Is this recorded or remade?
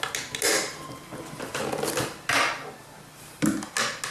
recorded